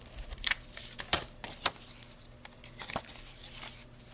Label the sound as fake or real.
real